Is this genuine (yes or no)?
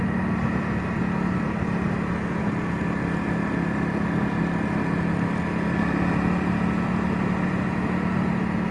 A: yes